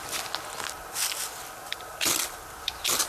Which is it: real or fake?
real